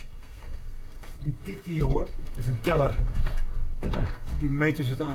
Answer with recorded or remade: remade